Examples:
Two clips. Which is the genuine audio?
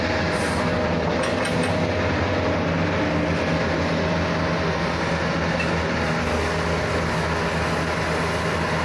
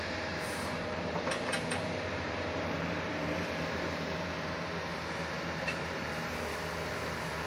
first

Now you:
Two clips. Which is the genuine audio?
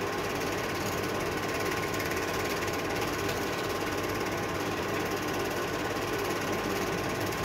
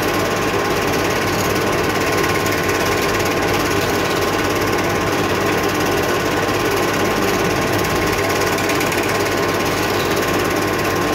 second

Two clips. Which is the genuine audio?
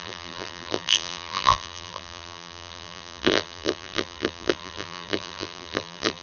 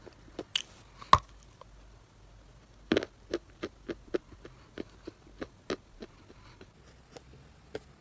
second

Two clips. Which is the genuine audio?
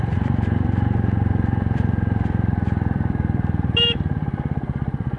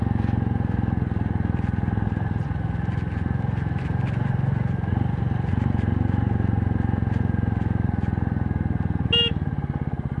second